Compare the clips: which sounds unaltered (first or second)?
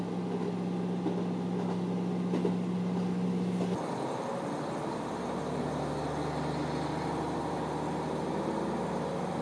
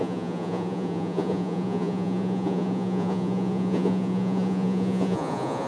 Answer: first